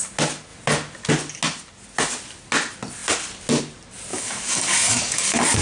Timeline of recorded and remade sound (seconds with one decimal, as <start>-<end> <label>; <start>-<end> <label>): 0.0-4.1 recorded; 4.1-5.6 remade